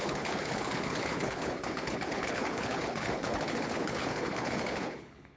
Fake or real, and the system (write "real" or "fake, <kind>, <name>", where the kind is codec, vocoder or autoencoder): fake, codec, HILCodec